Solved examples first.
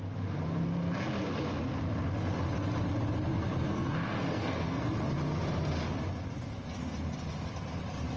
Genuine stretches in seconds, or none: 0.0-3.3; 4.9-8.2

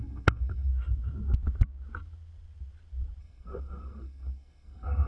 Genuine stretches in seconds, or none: 0.7-3.2

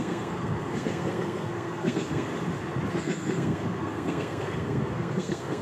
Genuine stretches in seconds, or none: 2.3-2.9

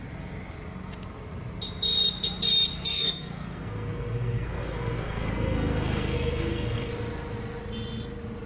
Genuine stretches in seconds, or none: 0.0-2.9; 6.9-8.5

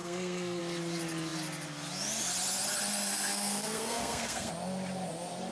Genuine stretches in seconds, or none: 0.6-3.3; 4.5-5.5